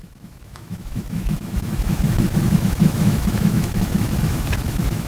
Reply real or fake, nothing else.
fake